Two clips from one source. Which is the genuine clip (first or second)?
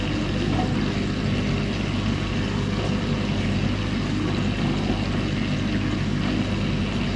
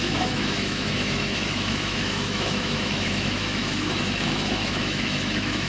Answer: first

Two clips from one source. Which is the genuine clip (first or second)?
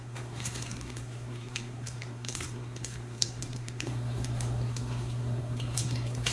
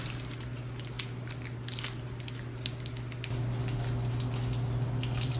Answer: second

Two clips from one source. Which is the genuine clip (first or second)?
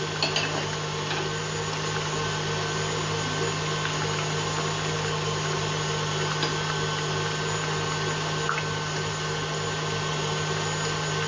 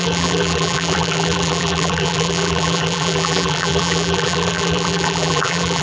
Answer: first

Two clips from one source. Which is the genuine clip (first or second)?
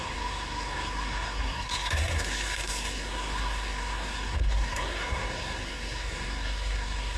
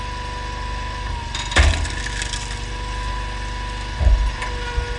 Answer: second